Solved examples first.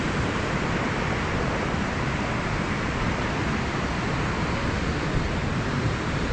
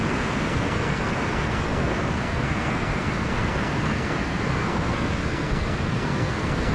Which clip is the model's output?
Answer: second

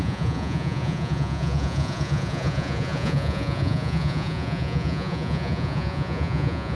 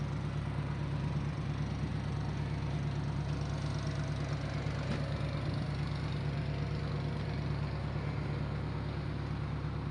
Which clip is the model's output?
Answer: first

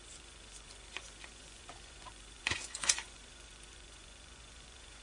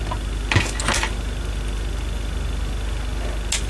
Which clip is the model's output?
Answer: first